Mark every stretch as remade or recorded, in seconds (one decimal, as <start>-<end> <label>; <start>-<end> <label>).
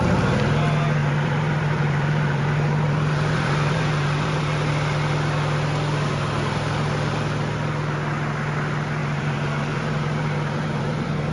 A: 0.0-1.0 recorded; 1.0-4.7 remade; 4.7-9.0 recorded; 9.0-11.3 remade